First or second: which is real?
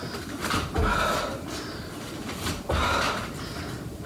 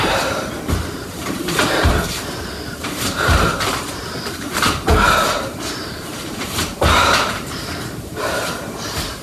first